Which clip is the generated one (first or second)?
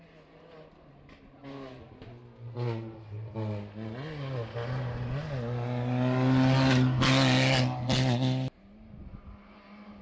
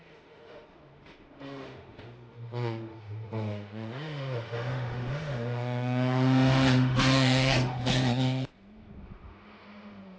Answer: second